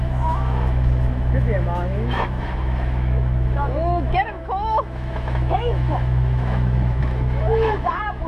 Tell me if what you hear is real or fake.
fake